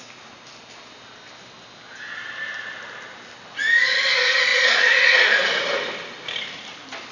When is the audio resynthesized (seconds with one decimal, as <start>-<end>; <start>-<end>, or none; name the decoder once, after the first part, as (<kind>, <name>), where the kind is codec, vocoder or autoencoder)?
0.0-7.1 (vocoder, BigVGAN v2)